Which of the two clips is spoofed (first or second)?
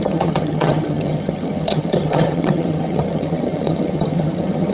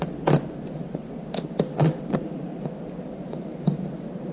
first